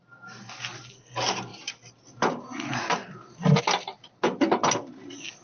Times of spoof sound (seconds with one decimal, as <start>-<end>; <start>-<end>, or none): none